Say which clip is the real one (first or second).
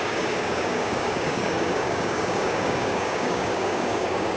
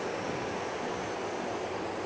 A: second